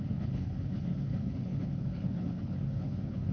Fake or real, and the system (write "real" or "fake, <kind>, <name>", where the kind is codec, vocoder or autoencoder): fake, codec, HILCodec